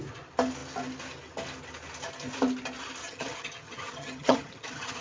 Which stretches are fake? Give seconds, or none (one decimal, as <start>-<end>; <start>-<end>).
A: 3.0-5.0